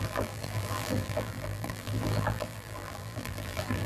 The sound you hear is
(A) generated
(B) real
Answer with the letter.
A